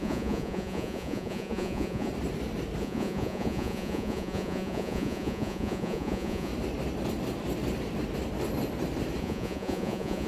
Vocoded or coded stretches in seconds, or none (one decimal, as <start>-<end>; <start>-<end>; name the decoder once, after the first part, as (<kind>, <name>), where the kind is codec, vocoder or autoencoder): 0.0-2.1 (vocoder, Vocos); 2.8-6.5; 9.2-10.3